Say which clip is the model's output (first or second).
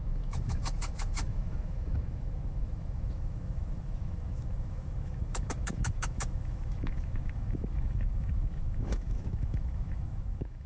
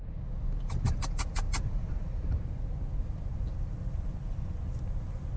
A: first